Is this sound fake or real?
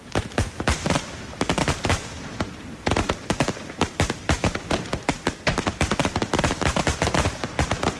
fake